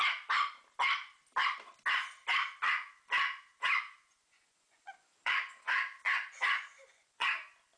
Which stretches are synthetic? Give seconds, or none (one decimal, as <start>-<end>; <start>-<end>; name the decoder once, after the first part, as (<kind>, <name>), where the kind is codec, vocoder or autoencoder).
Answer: 3.5-7.3 (vocoder, Vocos)